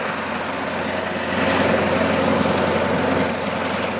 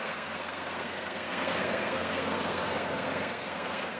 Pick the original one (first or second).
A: first